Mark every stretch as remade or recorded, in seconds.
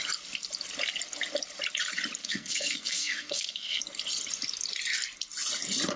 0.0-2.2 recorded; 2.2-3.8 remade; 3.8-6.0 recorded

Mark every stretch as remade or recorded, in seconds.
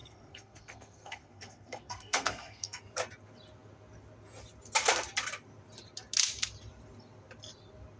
0.0-2.8 remade; 2.8-8.0 recorded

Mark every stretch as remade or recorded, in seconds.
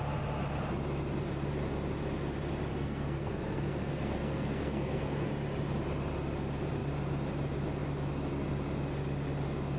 0.0-2.7 recorded; 2.7-5.3 remade; 5.3-9.8 recorded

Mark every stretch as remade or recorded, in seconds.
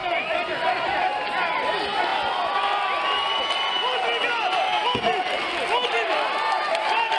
0.0-7.2 recorded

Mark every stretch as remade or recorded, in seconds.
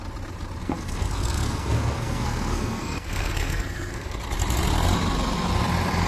0.0-0.6 recorded; 0.6-4.2 remade; 4.2-6.1 recorded